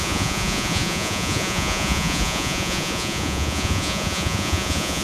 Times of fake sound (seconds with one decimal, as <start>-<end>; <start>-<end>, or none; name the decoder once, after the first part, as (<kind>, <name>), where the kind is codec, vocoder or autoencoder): 0.0-5.0 (vocoder, Vocos)